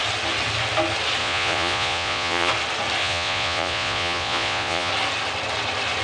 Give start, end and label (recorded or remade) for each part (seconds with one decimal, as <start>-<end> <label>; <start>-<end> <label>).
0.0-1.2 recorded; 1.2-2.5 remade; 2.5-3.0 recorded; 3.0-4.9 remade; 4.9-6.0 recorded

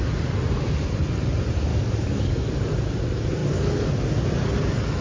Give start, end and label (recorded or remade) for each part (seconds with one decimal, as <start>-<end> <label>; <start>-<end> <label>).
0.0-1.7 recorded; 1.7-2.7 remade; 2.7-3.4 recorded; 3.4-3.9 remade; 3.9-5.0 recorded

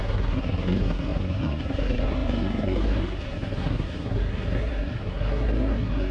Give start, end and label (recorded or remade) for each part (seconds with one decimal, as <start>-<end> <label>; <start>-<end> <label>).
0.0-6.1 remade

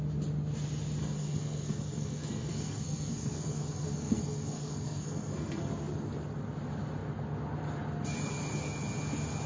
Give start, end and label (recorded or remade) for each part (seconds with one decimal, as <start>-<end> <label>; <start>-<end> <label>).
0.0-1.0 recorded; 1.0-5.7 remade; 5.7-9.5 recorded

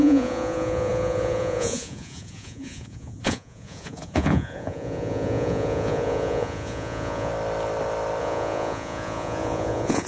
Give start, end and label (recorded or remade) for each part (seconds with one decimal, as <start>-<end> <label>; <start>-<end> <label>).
0.0-7.3 remade; 7.3-8.2 recorded; 8.2-10.1 remade

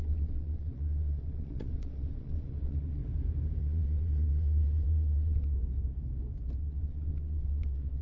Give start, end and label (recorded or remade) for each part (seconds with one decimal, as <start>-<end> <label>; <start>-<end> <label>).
0.0-3.0 remade; 3.0-3.6 recorded; 3.6-5.6 remade; 5.6-6.6 recorded; 6.6-8.0 remade

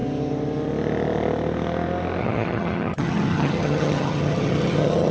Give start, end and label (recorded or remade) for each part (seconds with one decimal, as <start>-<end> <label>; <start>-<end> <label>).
0.0-2.2 recorded; 2.2-5.1 remade

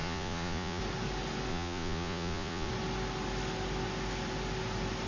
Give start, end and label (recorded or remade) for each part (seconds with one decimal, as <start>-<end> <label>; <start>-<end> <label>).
0.0-0.8 remade; 0.8-1.5 recorded; 1.5-2.7 remade; 2.7-5.1 recorded